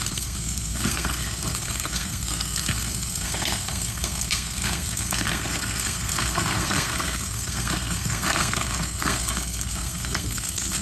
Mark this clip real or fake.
fake